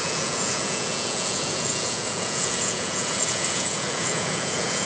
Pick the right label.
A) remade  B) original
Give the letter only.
A